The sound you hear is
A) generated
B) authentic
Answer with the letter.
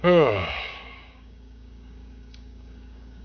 A